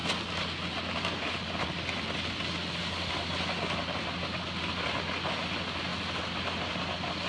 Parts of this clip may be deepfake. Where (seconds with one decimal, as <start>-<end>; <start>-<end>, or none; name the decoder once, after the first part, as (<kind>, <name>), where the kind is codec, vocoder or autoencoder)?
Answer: none

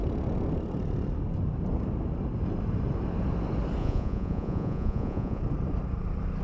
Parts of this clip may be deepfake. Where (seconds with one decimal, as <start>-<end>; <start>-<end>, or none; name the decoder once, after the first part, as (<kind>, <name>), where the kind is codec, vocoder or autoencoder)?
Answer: 3.8-5.4 (vocoder, Vocos)